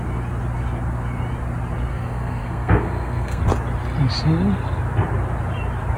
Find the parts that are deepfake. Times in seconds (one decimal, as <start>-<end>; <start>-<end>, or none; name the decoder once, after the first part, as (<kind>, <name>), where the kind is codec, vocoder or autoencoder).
1.9-3.4 (codec, SNAC)